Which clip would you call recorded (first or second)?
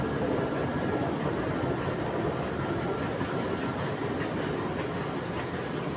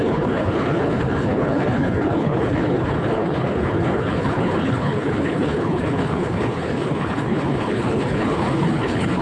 first